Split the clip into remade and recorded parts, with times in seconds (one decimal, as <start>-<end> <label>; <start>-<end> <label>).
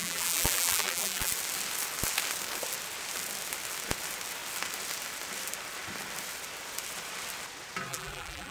0.0-1.3 remade; 1.3-7.9 recorded; 7.9-8.5 remade